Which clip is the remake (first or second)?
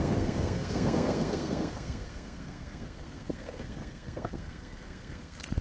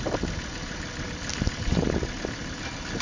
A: first